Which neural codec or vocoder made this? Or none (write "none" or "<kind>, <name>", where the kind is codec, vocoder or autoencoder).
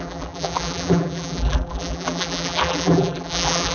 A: vocoder, BigVGAN v2